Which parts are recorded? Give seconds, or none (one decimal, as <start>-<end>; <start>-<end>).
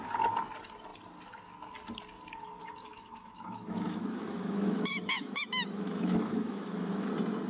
0.0-2.6; 7.1-7.5